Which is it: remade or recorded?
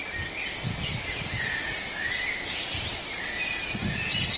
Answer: recorded